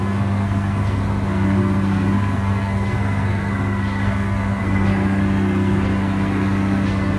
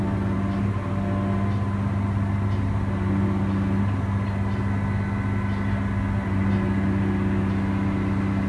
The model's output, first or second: first